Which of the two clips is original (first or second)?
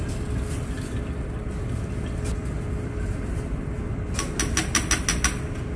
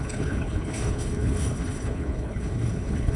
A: first